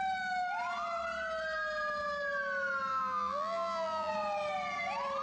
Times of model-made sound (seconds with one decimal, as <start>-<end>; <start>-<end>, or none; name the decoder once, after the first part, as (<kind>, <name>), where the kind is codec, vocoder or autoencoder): 2.9-4.1 (vocoder, BigVGAN v2)